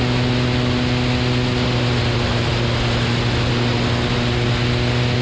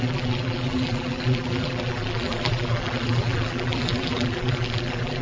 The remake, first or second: second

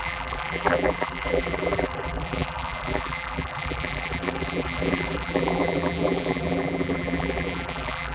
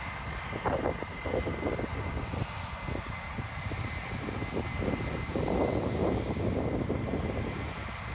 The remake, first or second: first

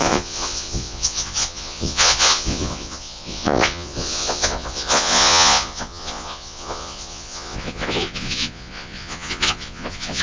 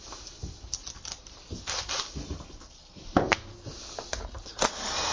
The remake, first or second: first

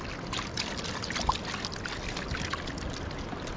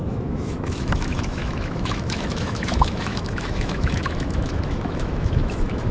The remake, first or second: second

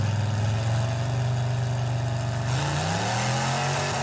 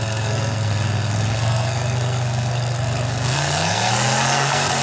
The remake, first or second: second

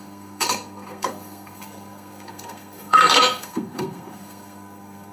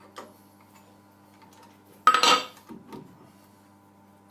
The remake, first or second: first